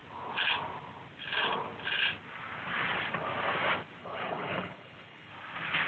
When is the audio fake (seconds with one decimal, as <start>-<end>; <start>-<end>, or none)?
4.0-5.3

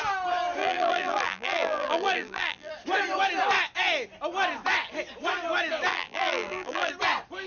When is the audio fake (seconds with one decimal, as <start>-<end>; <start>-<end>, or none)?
0.6-2.7; 5.9-6.9